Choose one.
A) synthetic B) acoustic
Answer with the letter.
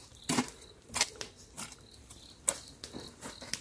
B